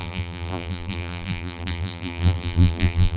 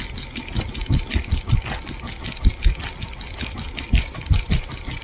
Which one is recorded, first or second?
second